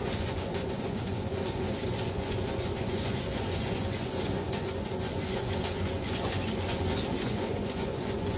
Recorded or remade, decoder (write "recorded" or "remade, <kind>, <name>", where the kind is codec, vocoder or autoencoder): remade, vocoder, Vocos